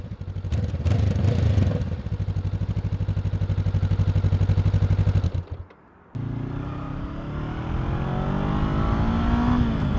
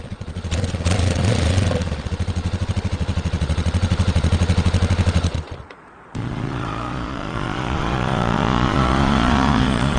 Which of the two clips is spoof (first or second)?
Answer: second